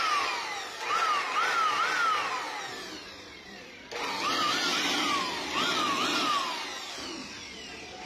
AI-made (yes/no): no